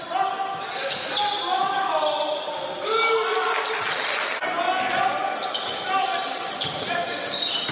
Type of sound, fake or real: real